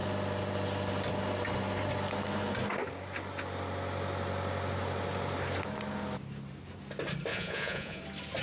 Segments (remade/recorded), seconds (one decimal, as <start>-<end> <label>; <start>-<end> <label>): 0.0-7.3 recorded; 7.3-8.0 remade; 8.0-8.4 recorded